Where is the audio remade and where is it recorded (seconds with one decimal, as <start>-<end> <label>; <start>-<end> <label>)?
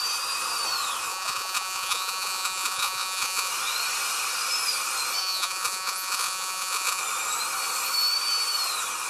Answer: 0.0-1.1 recorded; 1.1-3.5 remade; 3.5-5.2 recorded; 5.2-7.0 remade; 7.0-9.1 recorded